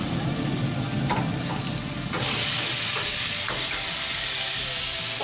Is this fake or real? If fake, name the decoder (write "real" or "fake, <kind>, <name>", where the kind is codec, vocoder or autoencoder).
real